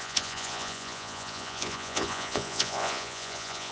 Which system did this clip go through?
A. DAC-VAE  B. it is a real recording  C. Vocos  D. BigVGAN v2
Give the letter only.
C